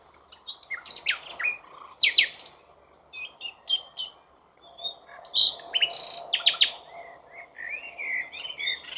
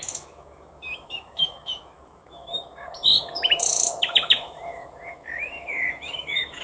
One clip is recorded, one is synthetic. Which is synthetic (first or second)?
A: second